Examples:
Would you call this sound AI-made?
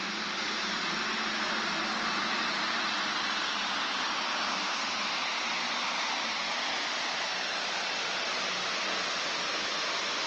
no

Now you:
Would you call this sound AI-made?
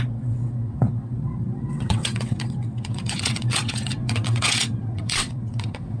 yes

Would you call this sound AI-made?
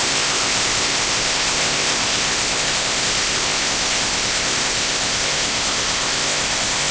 yes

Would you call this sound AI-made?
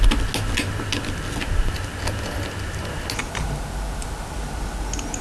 no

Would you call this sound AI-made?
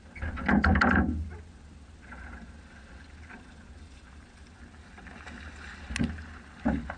no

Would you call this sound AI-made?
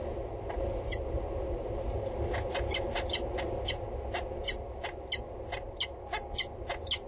no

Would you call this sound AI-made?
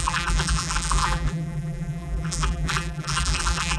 yes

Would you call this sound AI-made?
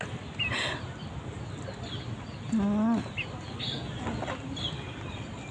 no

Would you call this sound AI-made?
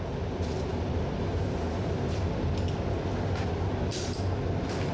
no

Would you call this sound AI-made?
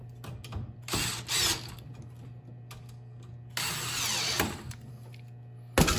no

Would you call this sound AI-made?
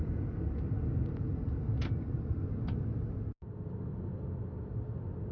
no